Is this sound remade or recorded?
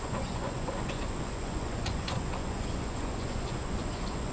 remade